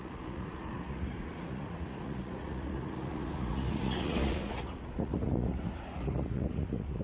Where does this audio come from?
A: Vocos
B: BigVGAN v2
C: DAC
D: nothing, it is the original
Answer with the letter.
A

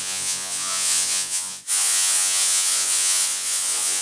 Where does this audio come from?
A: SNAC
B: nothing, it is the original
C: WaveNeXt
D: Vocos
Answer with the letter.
D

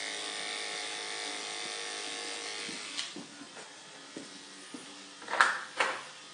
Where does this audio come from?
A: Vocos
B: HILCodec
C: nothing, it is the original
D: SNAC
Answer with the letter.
C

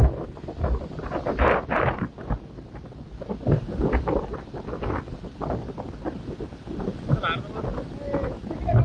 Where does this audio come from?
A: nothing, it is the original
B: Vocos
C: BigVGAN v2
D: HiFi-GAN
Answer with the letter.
A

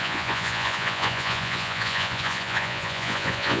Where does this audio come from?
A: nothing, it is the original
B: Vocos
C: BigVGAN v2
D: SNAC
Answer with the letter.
B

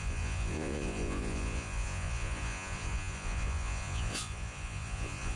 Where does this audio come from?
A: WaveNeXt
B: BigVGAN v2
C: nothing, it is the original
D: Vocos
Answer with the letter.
D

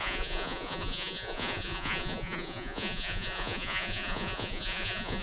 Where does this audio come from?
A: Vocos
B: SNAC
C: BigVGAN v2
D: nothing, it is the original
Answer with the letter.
A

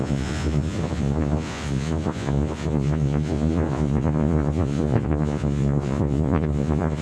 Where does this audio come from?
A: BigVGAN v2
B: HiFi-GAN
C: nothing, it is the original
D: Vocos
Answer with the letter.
D